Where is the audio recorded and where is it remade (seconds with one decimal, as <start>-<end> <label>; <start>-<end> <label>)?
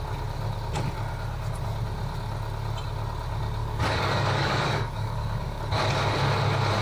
0.0-3.6 recorded; 3.6-5.6 remade; 5.6-6.8 recorded